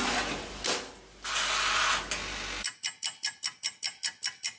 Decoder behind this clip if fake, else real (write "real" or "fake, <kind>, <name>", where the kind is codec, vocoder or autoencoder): real